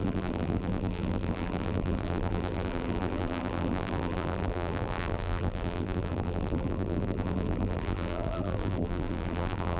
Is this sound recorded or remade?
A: remade